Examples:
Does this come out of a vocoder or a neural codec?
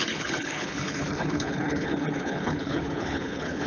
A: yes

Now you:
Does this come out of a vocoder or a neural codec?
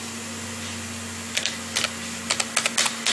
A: no